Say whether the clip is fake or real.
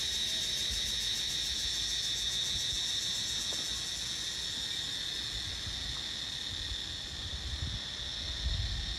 real